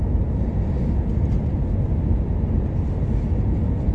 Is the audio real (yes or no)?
yes